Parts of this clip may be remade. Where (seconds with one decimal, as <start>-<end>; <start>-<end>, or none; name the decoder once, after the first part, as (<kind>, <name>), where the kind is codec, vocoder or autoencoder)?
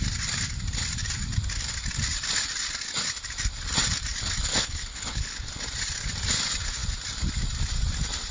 4.5-5.5 (codec, HILCodec)